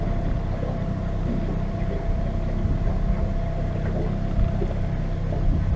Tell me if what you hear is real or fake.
real